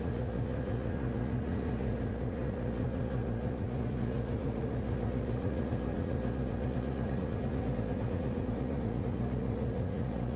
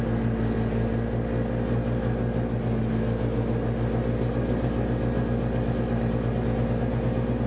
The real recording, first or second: second